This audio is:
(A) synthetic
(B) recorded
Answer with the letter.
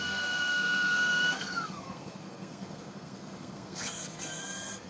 A